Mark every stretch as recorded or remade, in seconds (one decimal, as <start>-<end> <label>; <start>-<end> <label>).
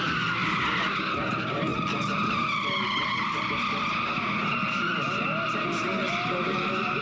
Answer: 0.0-7.0 recorded